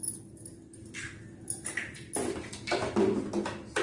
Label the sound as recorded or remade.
recorded